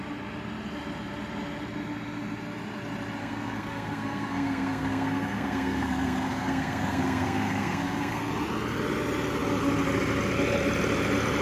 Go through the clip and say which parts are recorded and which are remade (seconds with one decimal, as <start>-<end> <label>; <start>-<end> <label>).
0.0-3.2 recorded; 3.2-8.3 remade; 8.3-11.4 recorded